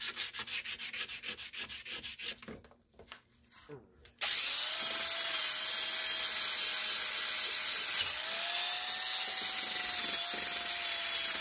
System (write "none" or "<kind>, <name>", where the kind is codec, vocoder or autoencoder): none